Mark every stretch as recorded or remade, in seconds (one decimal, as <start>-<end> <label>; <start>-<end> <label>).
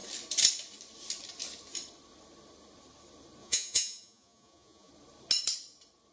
0.0-3.4 recorded; 3.4-4.9 remade; 4.9-6.1 recorded